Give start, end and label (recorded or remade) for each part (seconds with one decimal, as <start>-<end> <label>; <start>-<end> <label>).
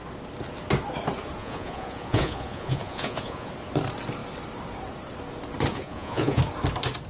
0.0-1.4 recorded; 1.4-3.5 remade; 3.5-5.7 recorded; 5.7-6.4 remade; 6.4-7.1 recorded